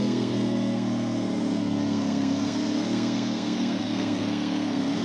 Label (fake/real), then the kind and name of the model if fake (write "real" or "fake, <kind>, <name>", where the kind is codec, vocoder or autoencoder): fake, codec, SNAC